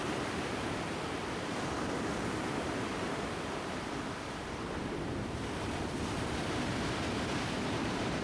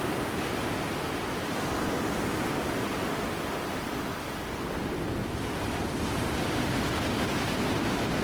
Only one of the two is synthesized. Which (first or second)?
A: first